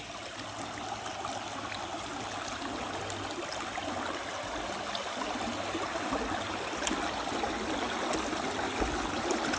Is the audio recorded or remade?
recorded